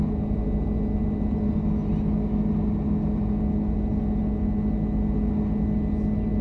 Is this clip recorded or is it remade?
recorded